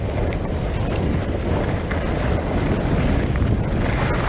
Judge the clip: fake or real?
real